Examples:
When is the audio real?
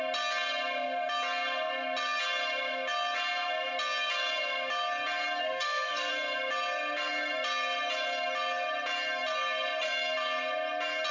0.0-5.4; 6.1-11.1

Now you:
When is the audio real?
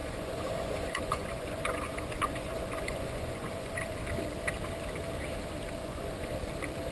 4.1-5.8; 6.3-6.9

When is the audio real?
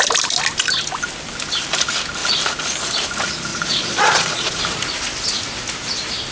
0.0-3.5; 4.6-6.3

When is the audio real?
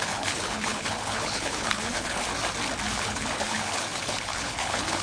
2.3-2.9